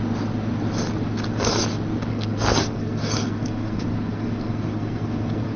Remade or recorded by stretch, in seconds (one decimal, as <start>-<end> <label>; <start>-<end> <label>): 0.0-2.1 recorded; 2.1-5.6 remade